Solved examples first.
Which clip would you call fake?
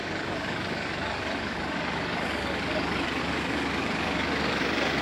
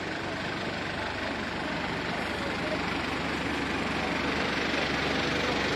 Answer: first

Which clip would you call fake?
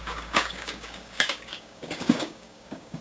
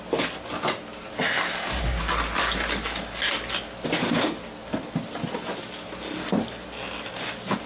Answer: first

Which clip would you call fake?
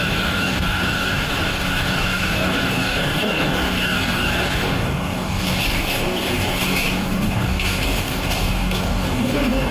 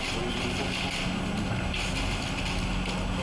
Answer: first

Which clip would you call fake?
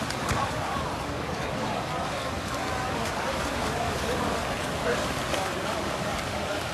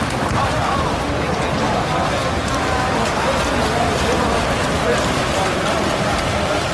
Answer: first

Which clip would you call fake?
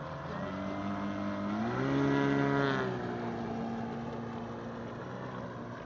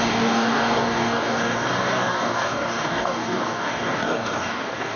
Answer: second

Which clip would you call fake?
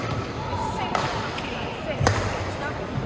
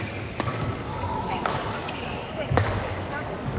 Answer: second